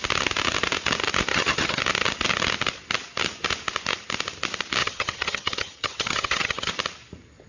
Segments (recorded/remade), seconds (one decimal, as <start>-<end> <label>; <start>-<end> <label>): 0.0-1.3 recorded; 1.3-1.8 remade; 1.8-4.8 recorded; 4.8-6.7 remade; 6.7-7.5 recorded